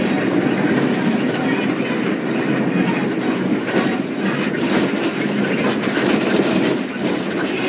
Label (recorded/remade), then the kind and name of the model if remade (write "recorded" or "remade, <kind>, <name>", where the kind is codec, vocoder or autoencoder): recorded